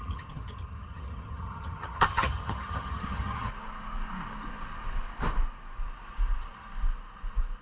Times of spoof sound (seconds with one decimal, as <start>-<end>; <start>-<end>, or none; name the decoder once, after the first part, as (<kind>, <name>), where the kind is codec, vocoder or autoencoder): 0.0-3.5 (vocoder, HiFi-GAN)